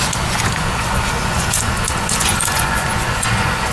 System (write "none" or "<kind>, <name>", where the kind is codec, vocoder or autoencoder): vocoder, Vocos